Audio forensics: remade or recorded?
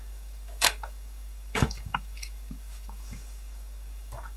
remade